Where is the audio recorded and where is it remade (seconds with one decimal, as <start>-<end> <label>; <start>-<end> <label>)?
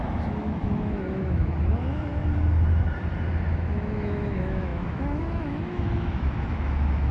0.0-2.1 remade; 2.1-3.5 recorded; 3.5-7.1 remade